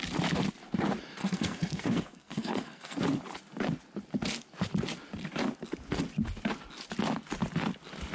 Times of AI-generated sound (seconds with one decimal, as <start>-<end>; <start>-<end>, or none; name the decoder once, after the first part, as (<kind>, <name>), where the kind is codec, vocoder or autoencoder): 1.2-3.0 (codec, SNAC)